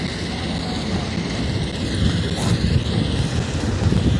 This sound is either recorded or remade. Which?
recorded